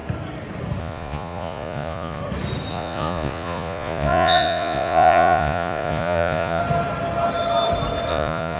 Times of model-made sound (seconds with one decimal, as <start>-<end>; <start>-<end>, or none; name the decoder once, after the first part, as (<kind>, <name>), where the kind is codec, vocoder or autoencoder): 0.8-2.2 (vocoder, Vocos); 2.7-6.6; 8.1-8.6